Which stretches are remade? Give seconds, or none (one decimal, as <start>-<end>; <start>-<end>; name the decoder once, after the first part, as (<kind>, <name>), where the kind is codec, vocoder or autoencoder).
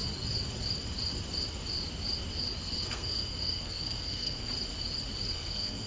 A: 2.6-4.5 (codec, SNAC); 5.3-5.9